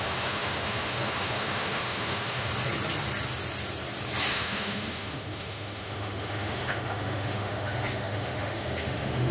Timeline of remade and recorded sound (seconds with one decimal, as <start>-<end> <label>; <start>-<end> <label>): 0.0-2.5 remade; 2.5-4.3 recorded; 4.3-9.3 remade